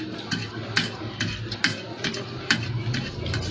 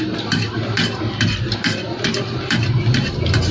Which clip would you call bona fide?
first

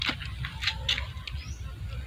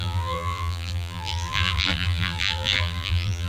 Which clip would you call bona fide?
first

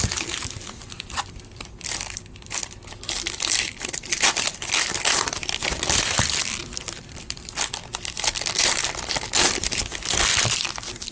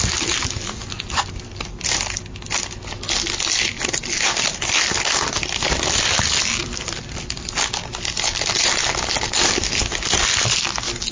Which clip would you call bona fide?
second